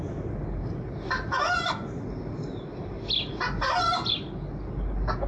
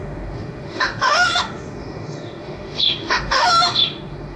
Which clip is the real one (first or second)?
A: first